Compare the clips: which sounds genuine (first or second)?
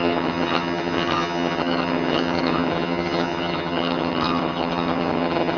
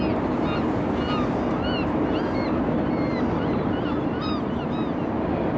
second